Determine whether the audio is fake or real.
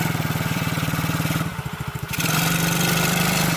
fake